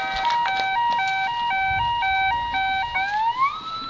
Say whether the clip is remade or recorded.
recorded